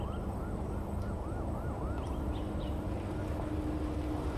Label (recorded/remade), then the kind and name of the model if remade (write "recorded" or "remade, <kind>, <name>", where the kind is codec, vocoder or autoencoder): recorded